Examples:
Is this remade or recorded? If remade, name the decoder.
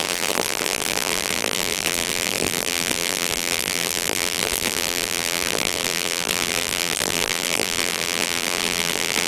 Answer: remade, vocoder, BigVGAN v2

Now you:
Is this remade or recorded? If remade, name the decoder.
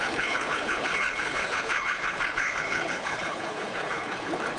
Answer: remade, codec, HILCodec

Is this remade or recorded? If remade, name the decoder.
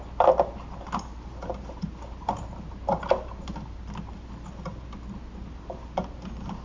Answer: recorded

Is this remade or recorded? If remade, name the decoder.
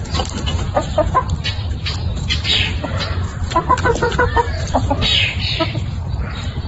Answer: remade, vocoder, BigVGAN v2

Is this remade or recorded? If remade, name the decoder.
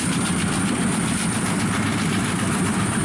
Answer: remade, vocoder, BigVGAN v2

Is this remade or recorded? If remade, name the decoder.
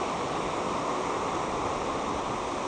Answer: recorded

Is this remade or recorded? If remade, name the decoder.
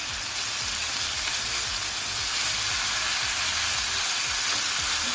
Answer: recorded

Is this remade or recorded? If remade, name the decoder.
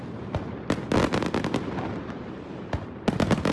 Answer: recorded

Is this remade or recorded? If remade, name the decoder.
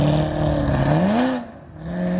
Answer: recorded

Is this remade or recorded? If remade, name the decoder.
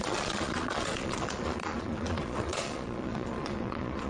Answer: remade, vocoder, Vocos